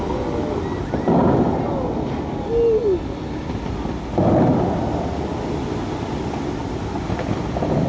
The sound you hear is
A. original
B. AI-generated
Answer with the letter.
A